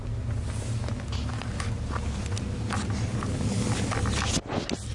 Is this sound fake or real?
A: real